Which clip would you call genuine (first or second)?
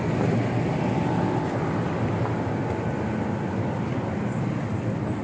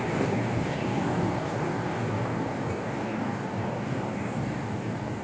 first